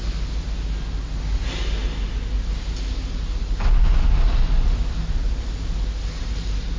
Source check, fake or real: real